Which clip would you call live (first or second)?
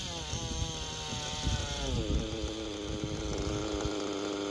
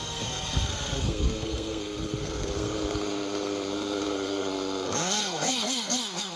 first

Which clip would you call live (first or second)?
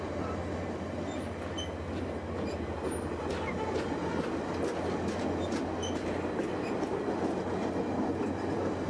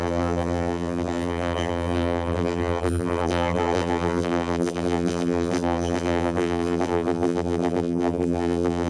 first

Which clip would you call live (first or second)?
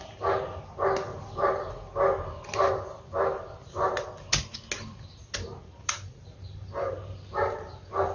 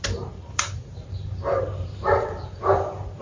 first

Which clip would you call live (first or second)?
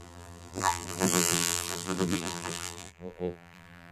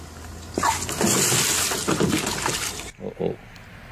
second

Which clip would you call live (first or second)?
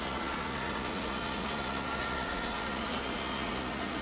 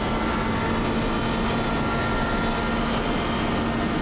second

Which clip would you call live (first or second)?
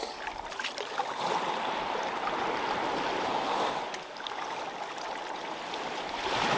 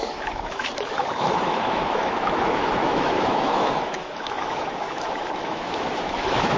first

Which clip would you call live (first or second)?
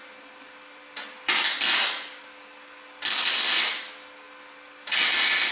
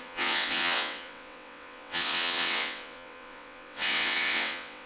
first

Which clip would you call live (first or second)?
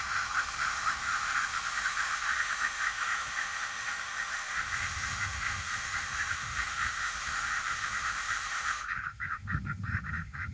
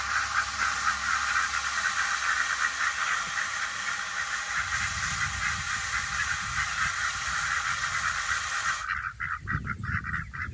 second